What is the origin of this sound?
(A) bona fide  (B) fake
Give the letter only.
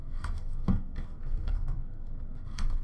B